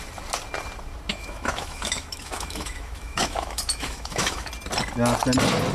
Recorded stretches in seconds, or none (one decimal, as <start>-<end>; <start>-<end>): 0.0-1.1; 4.5-5.7